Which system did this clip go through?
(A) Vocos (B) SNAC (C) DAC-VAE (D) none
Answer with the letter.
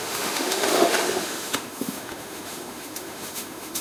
C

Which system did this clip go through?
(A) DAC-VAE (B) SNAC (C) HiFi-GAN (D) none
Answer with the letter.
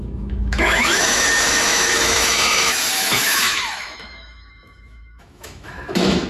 A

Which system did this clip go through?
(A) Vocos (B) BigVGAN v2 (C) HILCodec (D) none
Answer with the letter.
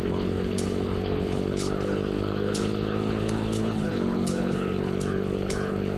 C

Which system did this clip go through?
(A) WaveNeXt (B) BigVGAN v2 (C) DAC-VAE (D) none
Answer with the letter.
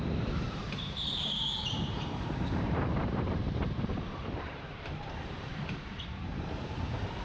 B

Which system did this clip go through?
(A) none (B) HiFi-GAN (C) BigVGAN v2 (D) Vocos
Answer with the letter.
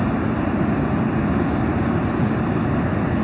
A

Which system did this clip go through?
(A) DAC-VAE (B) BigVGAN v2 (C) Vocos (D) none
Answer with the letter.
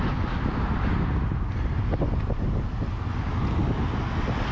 D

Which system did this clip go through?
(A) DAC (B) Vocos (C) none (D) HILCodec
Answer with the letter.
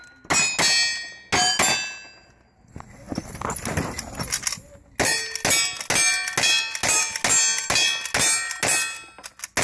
C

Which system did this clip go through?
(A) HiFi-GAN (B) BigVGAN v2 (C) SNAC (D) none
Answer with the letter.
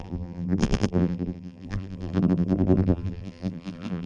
B